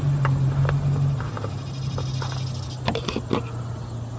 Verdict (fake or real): real